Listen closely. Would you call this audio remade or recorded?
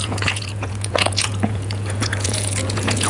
remade